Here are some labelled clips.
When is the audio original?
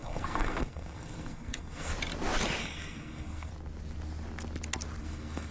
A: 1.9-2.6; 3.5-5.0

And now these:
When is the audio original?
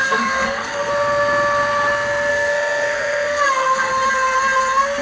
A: 0.9-2.3; 3.9-5.0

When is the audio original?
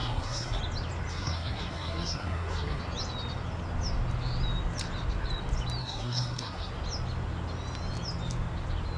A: 0.6-1.1; 2.8-5.8; 6.7-9.0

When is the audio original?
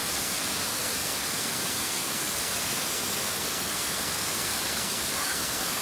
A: none